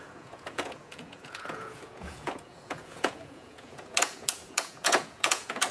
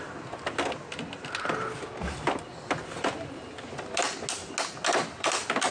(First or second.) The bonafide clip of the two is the second